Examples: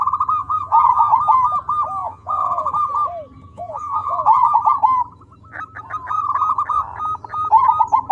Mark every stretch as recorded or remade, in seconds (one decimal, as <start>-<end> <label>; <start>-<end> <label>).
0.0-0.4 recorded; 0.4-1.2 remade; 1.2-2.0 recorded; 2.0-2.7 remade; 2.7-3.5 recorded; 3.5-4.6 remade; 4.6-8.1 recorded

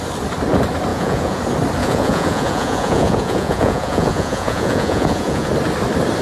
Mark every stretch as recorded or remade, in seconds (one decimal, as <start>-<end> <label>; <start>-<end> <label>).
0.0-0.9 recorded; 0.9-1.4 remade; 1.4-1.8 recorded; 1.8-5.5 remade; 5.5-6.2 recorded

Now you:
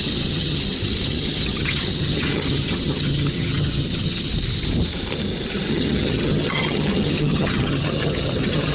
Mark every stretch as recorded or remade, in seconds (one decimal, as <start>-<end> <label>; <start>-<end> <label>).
0.0-4.3 remade; 4.3-5.7 recorded; 5.7-8.7 remade

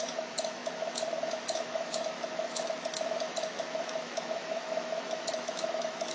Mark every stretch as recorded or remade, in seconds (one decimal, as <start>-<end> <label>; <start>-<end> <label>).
0.0-6.1 remade